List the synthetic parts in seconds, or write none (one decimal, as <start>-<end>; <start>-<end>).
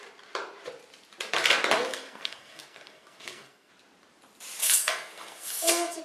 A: 1.9-3.7; 4.6-6.0